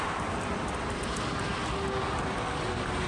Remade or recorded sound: recorded